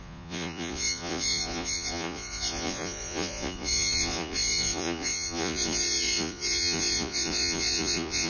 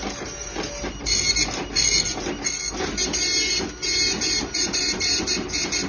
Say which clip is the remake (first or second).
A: first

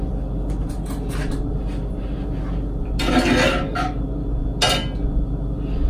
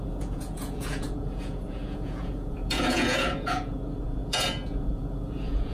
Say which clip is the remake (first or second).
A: second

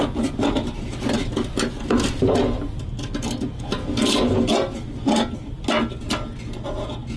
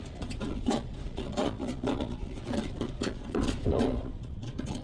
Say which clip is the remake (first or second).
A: second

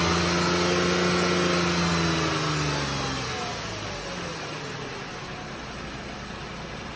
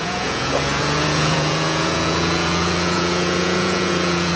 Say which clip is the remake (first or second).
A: second